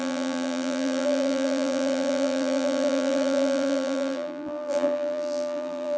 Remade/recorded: remade